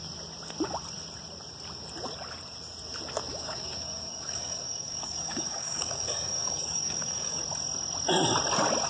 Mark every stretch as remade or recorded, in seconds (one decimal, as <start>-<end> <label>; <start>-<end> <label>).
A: 0.0-3.3 recorded; 3.3-7.4 remade; 7.4-8.9 recorded